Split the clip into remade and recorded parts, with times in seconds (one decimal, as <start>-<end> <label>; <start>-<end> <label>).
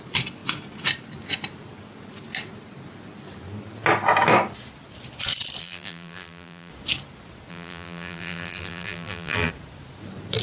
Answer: 0.0-5.6 recorded; 5.6-6.7 remade; 6.7-7.5 recorded; 7.5-9.5 remade; 9.5-10.4 recorded